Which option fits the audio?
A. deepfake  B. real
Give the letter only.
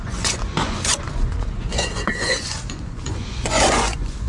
A